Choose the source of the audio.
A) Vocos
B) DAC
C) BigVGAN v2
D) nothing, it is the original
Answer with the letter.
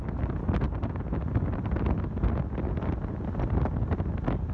D